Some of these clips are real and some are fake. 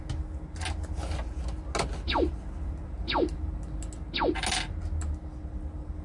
real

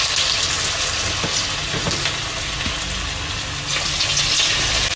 real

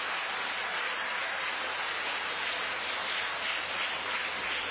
real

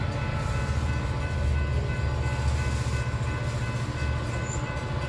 real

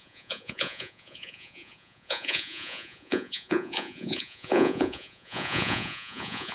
fake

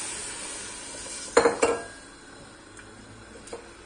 real